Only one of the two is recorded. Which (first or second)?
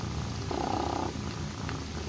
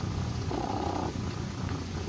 first